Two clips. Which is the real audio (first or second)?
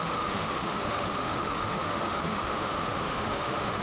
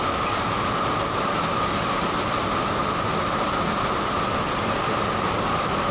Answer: second